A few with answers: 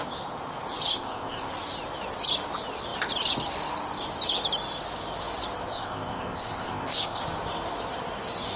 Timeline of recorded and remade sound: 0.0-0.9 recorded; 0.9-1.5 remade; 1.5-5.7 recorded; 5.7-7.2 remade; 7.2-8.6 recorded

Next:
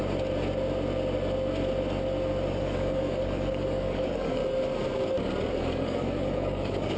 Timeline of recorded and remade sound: 0.0-2.6 recorded; 2.6-4.4 remade; 4.4-5.5 recorded; 5.5-7.0 remade

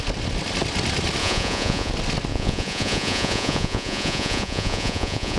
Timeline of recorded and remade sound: 0.0-1.2 recorded; 1.2-1.9 remade; 1.9-2.3 recorded; 2.3-5.4 remade

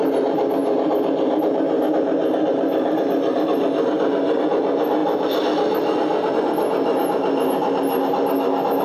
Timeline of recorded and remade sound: 0.0-8.8 recorded

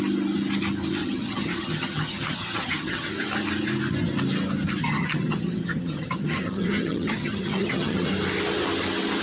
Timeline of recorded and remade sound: 0.0-1.0 recorded; 1.0-3.1 remade; 3.1-4.8 recorded; 4.8-8.1 remade; 8.1-9.2 recorded